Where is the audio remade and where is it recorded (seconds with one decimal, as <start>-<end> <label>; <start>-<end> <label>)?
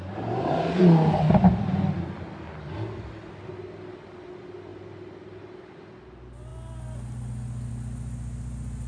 0.0-8.9 recorded